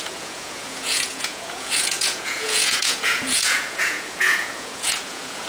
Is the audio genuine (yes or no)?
no